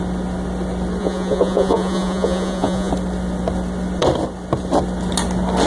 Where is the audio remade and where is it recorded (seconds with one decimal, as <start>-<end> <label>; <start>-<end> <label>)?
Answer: 0.0-1.0 recorded; 1.0-2.9 remade; 2.9-5.7 recorded